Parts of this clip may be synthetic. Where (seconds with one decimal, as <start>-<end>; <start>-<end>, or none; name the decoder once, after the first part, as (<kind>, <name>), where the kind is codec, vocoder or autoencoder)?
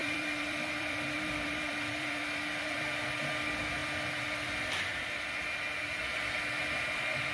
0.0-3.3 (vocoder, BigVGAN v2)